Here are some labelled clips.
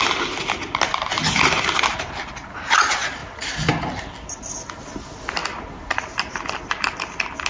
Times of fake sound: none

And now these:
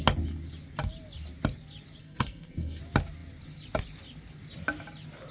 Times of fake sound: 2.0-2.8 (codec, SNAC)

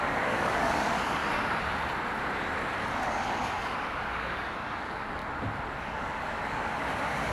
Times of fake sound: 0.0-1.2 (codec, DAC); 2.9-5.2; 5.8-7.3